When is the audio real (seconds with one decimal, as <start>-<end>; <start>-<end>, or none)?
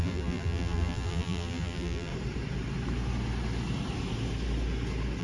2.1-5.2